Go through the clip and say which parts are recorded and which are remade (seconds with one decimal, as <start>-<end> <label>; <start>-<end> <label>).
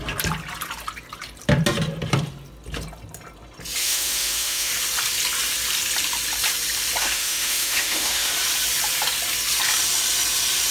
0.0-3.8 recorded; 3.8-4.7 remade; 4.7-7.0 recorded; 7.0-8.3 remade; 8.3-10.7 recorded